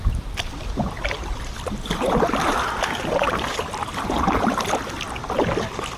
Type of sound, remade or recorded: recorded